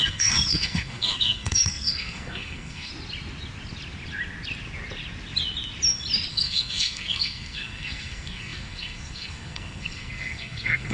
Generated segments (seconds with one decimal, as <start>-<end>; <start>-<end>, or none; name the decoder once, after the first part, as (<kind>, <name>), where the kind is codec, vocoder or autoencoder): 0.0-2.9 (codec, SNAC); 6.3-10.9